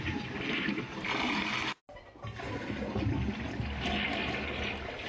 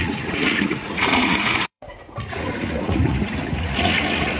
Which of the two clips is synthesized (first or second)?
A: second